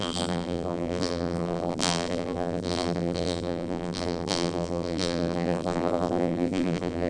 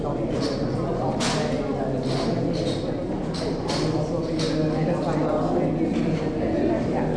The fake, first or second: first